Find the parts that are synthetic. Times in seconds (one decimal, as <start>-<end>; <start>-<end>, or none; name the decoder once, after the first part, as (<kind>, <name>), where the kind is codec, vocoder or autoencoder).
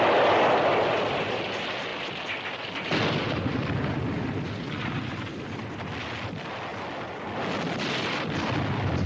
none